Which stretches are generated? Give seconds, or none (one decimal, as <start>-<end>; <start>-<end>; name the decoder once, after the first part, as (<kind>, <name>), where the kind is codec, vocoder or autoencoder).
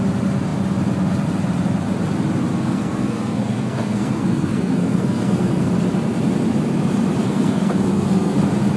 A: 2.5-5.7 (codec, SNAC); 7.2-8.4